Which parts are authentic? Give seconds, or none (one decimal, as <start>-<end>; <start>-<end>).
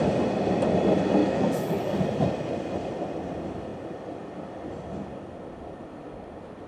0.0-1.2; 1.8-6.7